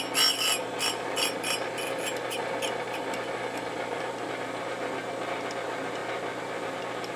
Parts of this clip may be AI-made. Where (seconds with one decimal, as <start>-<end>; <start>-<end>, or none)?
none